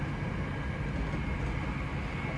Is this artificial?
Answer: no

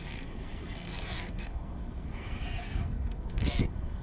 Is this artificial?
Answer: yes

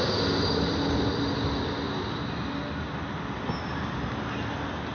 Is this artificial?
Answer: no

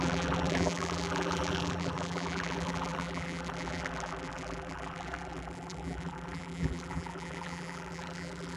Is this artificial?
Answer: yes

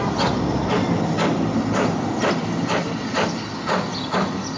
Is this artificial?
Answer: no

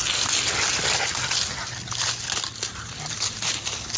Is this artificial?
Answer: no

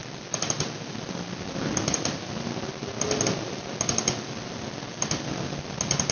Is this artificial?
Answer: no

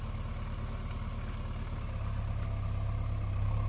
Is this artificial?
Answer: no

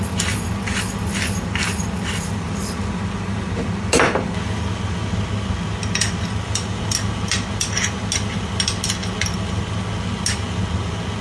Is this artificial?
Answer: no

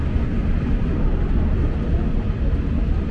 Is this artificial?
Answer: no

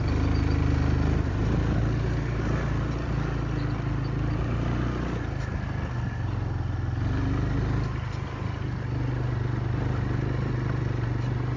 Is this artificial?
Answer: no